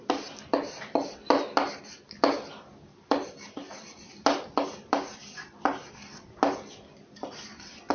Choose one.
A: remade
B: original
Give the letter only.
B